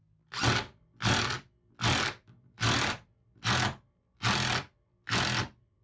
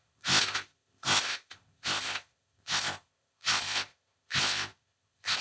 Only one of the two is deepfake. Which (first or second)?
second